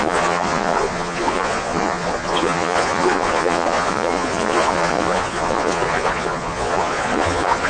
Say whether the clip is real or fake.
fake